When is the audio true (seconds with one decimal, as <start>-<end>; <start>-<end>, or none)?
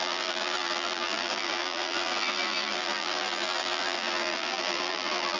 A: none